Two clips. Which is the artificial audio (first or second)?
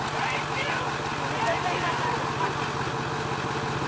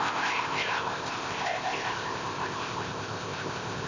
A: second